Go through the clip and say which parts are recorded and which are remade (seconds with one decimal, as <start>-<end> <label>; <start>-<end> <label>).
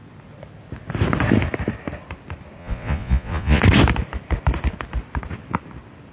0.0-2.6 recorded; 2.6-3.6 remade; 3.6-6.1 recorded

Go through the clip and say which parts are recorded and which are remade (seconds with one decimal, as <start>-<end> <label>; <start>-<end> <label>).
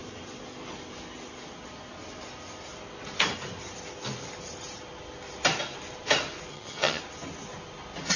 0.0-6.5 recorded; 6.5-7.0 remade; 7.0-8.2 recorded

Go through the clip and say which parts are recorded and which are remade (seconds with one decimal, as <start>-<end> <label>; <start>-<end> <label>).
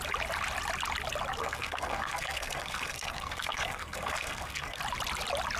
0.0-1.4 recorded; 1.4-4.8 remade; 4.8-5.6 recorded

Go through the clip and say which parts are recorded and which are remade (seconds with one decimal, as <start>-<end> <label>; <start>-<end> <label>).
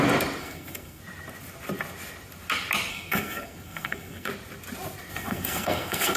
0.0-0.4 recorded; 0.4-1.0 remade; 1.0-2.9 recorded; 2.9-4.3 remade; 4.3-5.1 recorded; 5.1-6.2 remade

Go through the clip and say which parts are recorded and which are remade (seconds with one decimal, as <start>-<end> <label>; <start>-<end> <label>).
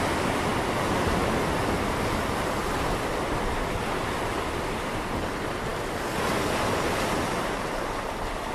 0.0-2.6 recorded; 2.6-3.8 remade; 3.8-8.5 recorded